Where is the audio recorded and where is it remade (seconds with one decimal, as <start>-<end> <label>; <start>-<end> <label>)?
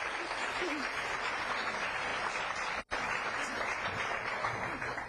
0.0-2.1 remade; 2.1-2.7 recorded; 2.7-5.1 remade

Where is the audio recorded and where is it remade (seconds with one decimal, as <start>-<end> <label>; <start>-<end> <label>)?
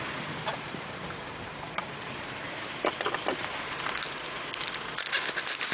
0.0-0.5 recorded; 0.5-3.9 remade; 3.9-5.7 recorded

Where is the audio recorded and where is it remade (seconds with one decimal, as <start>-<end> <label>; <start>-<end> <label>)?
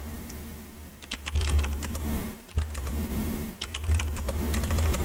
0.0-5.0 remade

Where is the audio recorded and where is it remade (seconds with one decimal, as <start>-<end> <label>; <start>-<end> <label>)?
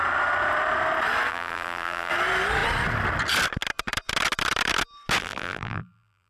0.0-1.3 recorded; 1.3-2.1 remade; 2.1-5.2 recorded; 5.2-6.3 remade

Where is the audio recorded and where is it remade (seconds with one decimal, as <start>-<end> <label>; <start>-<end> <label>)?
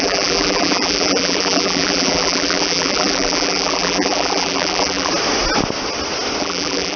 0.0-5.1 remade; 5.1-6.4 recorded; 6.4-7.0 remade